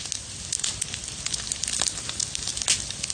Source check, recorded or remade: recorded